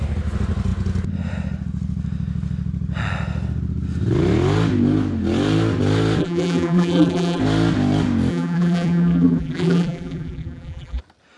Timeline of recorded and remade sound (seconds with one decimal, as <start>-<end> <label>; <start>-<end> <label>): 0.0-6.2 recorded; 6.2-7.4 remade; 7.4-8.3 recorded; 8.3-11.0 remade; 11.0-11.4 recorded